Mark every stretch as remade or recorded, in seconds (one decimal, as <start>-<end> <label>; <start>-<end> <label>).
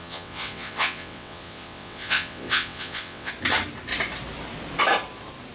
0.0-3.3 remade; 3.3-5.5 recorded